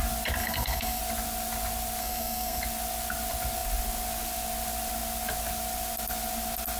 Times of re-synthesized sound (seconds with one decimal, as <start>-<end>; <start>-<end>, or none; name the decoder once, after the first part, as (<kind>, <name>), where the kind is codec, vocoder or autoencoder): 0.4-1.0 (codec, SNAC); 2.0-2.6